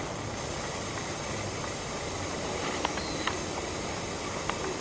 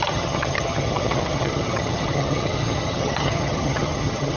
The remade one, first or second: second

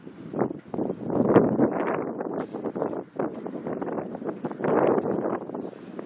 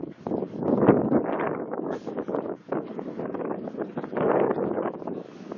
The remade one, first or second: second